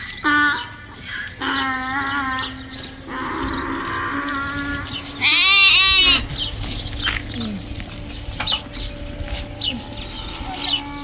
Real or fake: real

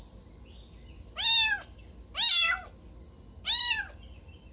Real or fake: real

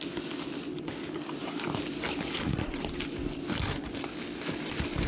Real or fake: real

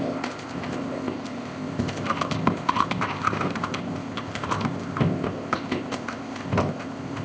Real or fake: fake